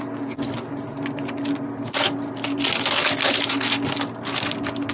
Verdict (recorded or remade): recorded